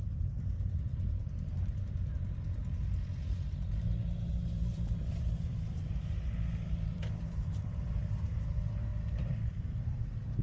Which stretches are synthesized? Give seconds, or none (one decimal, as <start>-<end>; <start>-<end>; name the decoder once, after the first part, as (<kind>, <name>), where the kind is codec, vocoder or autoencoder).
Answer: 0.0-2.6 (vocoder, BigVGAN v2); 4.3-8.9; 9.5-10.4